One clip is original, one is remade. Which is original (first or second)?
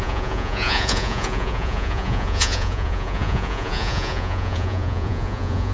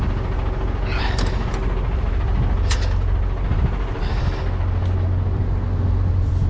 second